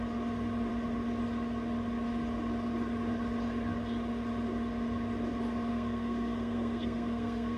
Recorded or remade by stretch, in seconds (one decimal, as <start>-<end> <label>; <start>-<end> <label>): 0.0-5.7 recorded; 5.7-7.6 remade